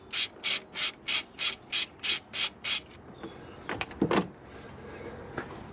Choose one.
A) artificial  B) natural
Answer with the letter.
B